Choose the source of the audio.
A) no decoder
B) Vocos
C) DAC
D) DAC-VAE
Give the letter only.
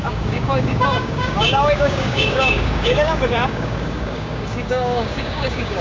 C